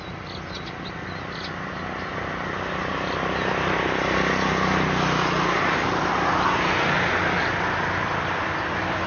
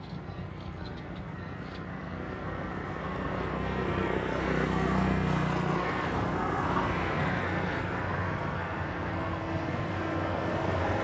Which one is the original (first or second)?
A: first